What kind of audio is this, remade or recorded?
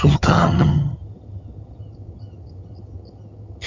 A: remade